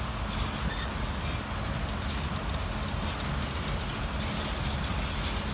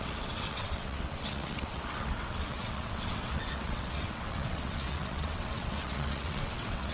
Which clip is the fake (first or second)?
second